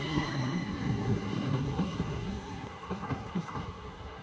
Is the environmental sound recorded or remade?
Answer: remade